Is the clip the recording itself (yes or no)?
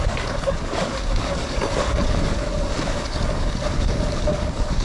no